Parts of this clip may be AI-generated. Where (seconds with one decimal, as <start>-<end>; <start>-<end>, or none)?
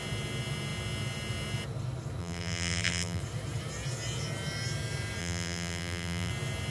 2.2-3.2; 5.2-6.3